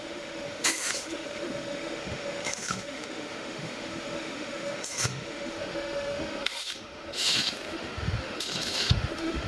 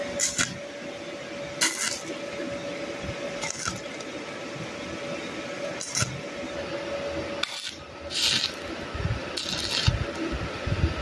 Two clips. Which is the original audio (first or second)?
second